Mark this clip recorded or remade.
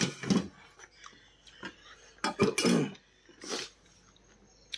recorded